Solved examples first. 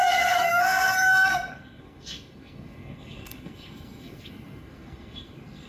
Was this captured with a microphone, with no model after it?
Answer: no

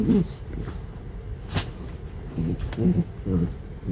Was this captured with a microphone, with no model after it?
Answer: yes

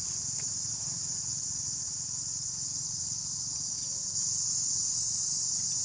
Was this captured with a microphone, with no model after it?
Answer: yes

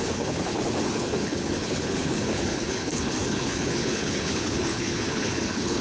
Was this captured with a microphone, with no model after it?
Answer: no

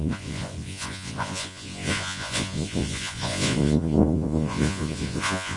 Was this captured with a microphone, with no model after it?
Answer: no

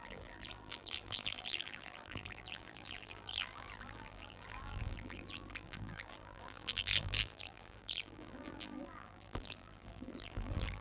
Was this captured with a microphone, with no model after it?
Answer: no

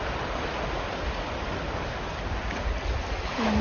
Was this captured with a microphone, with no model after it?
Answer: yes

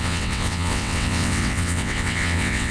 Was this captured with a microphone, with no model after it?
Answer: no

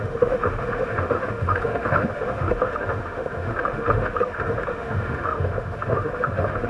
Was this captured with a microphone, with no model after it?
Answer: no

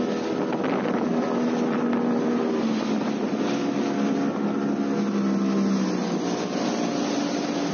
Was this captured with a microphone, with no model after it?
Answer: yes